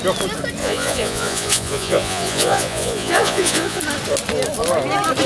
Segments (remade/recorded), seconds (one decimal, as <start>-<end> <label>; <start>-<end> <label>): 0.0-0.6 recorded; 0.6-3.8 remade; 3.8-5.3 recorded